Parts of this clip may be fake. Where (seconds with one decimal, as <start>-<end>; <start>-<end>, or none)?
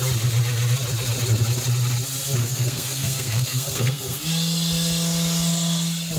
2.4-4.3